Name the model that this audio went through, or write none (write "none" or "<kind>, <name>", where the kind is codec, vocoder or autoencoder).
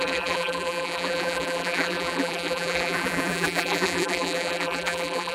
vocoder, BigVGAN v2